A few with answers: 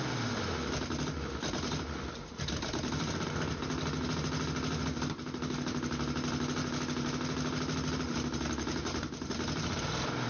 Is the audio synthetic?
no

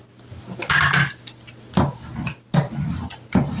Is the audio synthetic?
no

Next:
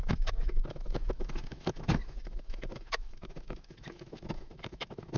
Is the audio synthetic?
yes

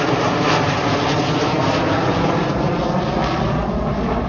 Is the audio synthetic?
no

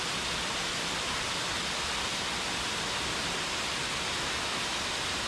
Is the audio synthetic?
no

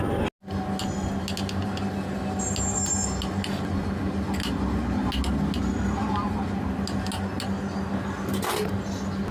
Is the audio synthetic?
no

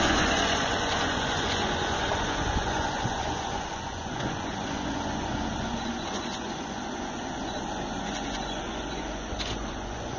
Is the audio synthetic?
yes